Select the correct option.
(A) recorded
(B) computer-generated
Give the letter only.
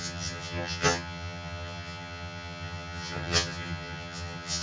B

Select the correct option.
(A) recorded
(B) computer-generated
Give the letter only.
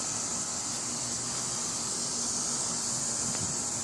A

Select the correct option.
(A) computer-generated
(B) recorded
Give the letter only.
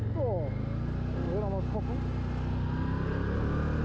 B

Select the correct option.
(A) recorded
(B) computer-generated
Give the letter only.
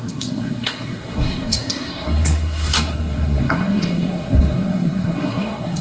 B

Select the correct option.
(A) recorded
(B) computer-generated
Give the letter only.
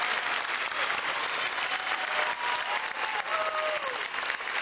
A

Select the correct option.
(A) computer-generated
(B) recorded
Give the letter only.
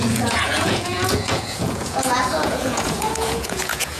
A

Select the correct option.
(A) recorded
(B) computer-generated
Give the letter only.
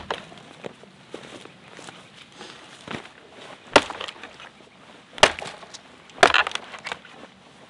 A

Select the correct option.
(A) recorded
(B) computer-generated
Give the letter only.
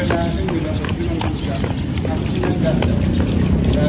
A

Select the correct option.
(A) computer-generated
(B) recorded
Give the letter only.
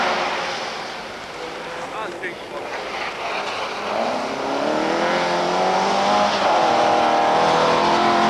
B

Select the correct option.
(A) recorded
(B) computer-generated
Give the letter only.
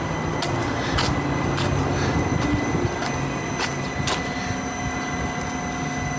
A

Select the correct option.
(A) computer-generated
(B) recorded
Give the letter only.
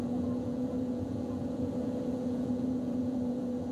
A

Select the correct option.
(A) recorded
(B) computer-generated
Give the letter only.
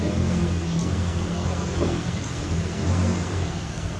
B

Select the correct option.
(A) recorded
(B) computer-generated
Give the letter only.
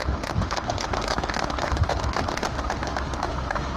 B